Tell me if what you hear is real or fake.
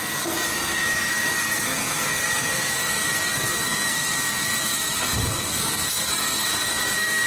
fake